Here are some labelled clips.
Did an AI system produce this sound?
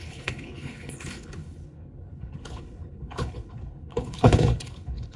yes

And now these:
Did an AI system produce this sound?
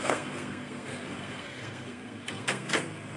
yes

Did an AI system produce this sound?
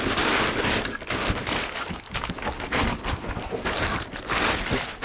no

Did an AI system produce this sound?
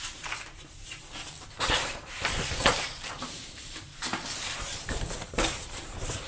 yes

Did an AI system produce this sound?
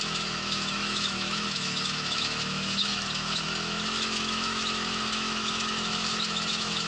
yes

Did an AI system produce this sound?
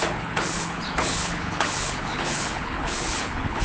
yes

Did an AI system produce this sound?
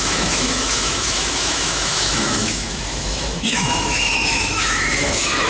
yes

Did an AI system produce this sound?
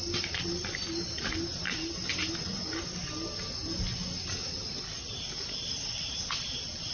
no